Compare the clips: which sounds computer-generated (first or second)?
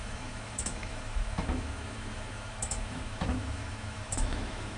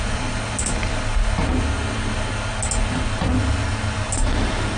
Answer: first